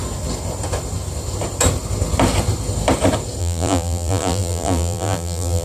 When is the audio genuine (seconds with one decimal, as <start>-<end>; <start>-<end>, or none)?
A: 0.0-3.4